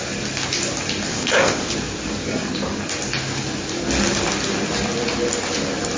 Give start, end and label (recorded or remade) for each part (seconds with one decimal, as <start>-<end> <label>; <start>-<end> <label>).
0.0-1.1 recorded; 1.1-1.7 remade; 1.7-6.0 recorded